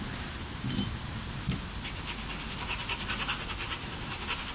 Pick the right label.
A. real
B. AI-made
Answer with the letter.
A